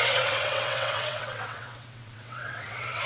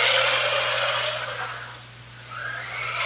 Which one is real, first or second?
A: second